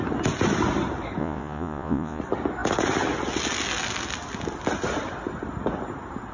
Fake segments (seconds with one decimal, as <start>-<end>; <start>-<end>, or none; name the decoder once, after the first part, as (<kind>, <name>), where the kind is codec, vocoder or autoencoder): 1.2-2.2 (vocoder, Vocos)